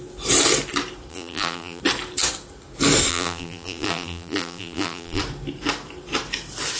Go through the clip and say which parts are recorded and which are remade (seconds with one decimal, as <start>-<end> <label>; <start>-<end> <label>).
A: 0.0-1.1 recorded; 1.1-1.8 remade; 1.8-3.1 recorded; 3.1-5.2 remade; 5.2-6.8 recorded